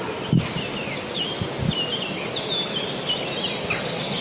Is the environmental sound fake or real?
real